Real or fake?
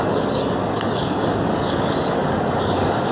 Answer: fake